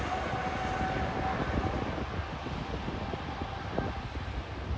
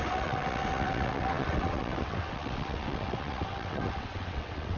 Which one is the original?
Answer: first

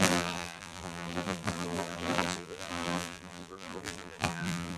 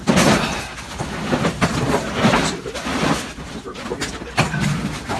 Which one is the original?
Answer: second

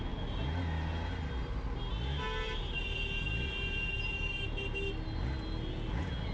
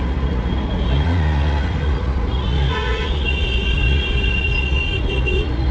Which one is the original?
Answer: first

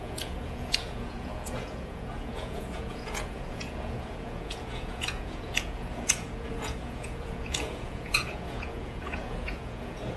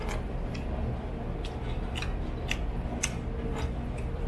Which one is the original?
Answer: second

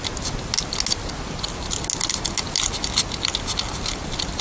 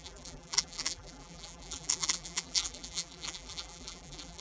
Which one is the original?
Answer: first